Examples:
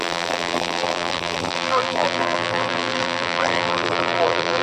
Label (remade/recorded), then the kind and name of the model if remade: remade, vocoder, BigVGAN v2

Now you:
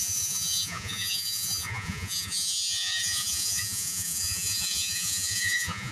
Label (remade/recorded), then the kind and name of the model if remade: remade, vocoder, Vocos